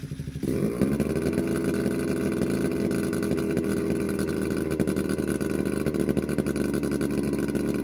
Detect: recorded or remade recorded